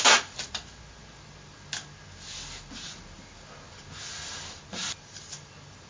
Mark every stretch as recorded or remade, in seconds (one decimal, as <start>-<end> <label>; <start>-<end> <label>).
0.0-4.7 recorded; 4.7-5.5 remade; 5.5-5.9 recorded